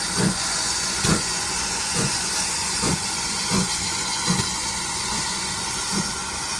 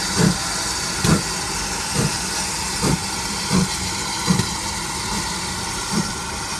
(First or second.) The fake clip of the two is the first